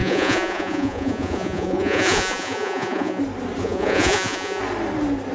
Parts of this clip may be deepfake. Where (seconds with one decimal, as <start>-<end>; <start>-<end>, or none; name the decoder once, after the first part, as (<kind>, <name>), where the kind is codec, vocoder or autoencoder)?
0.0-3.2 (vocoder, Vocos); 3.6-4.6